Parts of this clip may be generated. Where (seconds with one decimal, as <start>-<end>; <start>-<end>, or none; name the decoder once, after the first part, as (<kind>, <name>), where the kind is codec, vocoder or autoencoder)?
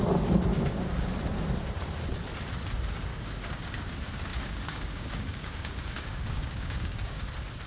0.5-1.1 (codec, DAC); 3.1-3.9; 4.3-7.2